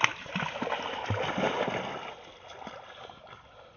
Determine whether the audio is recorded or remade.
recorded